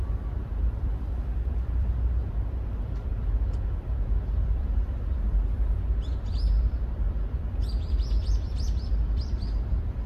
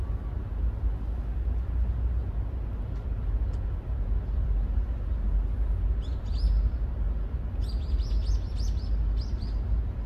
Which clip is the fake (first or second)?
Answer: first